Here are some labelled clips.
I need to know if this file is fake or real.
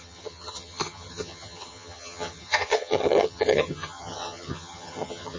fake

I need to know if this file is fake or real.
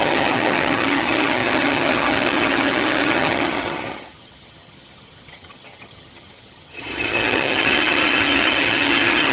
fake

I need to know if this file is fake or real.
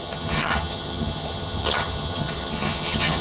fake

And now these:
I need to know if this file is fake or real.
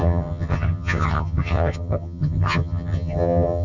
fake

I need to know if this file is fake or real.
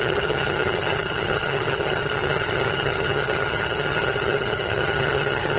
fake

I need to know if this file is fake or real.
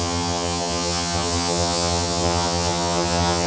fake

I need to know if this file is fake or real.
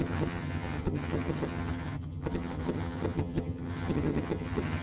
fake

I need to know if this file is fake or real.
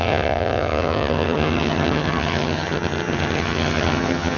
fake